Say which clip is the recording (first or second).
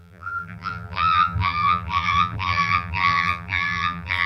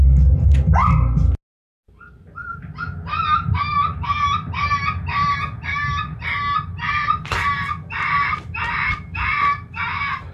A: second